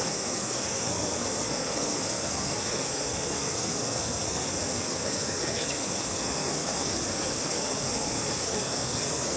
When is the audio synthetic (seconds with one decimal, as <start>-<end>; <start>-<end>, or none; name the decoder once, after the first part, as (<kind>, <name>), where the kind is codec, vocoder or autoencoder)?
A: 0.0-9.4 (codec, SNAC)